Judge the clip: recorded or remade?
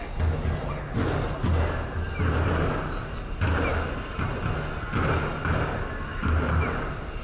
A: recorded